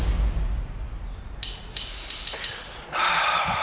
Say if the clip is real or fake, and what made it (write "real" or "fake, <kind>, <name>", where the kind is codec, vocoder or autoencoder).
real